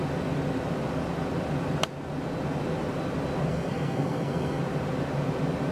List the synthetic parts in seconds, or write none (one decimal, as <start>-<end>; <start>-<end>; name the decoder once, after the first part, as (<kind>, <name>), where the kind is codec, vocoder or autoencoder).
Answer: 3.5-4.6 (codec, SNAC)

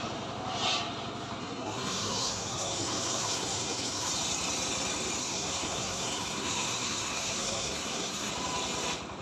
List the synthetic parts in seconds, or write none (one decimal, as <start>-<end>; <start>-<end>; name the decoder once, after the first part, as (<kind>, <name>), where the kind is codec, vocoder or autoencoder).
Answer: 1.4-4.1 (codec, SNAC); 5.2-8.3

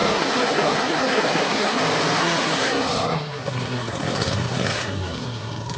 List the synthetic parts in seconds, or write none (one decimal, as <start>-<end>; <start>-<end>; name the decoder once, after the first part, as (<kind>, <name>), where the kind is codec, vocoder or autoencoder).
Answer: 0.0-1.8 (codec, SNAC); 2.2-5.8